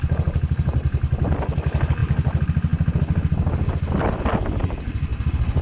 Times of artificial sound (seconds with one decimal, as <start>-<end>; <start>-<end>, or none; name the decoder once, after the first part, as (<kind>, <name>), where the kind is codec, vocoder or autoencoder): none